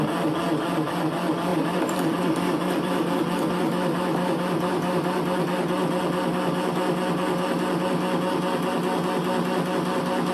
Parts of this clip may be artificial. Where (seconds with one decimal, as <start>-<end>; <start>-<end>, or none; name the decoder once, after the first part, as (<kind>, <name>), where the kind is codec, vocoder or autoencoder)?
1.5-3.1 (vocoder, BigVGAN v2)